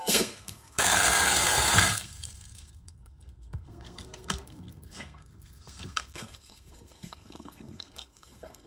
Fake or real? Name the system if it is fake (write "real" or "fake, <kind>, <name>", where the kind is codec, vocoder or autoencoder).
fake, codec, SNAC